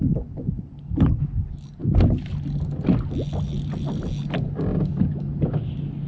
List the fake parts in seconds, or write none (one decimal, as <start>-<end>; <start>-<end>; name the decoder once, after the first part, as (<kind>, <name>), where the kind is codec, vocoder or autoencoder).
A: none